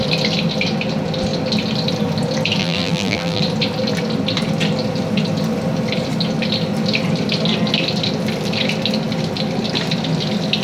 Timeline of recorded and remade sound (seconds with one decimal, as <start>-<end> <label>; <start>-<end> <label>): 0.0-2.6 recorded; 2.6-3.4 remade; 3.4-10.6 recorded